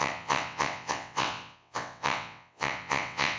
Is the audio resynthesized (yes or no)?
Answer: yes